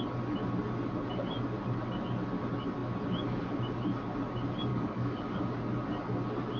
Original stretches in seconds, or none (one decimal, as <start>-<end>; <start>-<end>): 0.0-4.7; 5.4-6.6